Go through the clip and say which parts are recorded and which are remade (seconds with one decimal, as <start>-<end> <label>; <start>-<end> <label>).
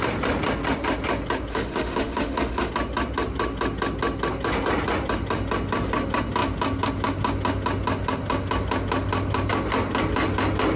0.0-1.5 recorded; 1.5-2.7 remade; 2.7-10.8 recorded